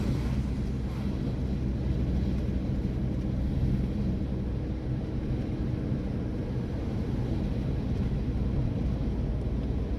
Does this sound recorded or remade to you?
recorded